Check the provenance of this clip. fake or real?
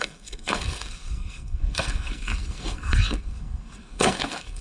fake